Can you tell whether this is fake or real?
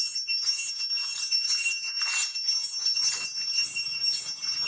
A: real